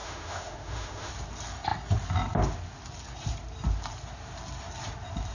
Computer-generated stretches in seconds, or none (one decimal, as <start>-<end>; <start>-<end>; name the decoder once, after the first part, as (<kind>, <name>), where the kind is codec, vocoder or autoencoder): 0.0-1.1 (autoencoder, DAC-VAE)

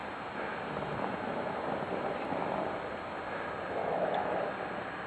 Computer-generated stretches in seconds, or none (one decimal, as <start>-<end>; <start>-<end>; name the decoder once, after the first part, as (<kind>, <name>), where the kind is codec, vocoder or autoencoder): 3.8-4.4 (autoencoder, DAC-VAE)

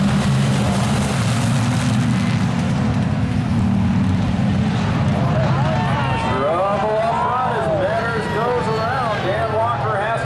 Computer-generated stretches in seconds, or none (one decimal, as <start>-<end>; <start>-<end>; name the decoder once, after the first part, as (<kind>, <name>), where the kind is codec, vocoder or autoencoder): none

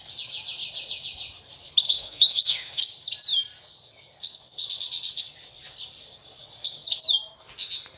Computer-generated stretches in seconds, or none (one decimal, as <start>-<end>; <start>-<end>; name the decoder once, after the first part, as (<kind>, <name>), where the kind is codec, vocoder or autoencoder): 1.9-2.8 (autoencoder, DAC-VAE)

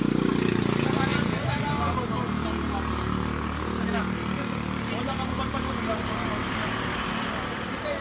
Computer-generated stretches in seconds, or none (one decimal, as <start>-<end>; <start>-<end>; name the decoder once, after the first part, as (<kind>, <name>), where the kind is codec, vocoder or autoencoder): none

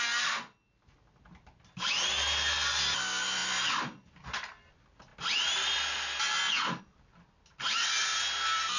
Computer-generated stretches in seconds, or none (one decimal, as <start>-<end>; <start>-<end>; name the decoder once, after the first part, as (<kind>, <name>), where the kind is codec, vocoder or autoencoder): none

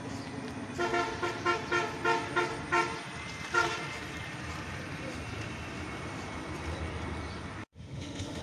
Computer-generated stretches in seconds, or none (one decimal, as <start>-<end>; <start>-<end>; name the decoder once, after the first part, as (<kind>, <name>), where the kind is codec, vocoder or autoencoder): 7.6-8.4 (autoencoder, DAC-VAE)

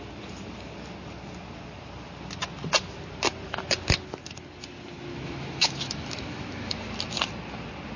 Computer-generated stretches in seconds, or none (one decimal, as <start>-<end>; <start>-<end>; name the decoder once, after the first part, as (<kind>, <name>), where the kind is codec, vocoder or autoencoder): 5.1-6.8 (autoencoder, DAC-VAE)